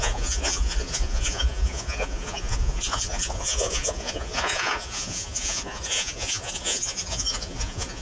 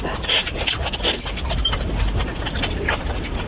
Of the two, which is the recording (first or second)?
second